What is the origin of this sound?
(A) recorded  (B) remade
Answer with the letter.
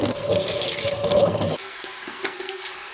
B